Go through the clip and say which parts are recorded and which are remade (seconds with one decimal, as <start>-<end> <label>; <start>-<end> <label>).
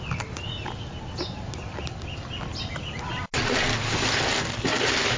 0.0-5.2 recorded